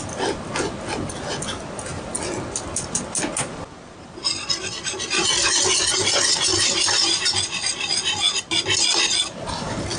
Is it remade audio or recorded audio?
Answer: recorded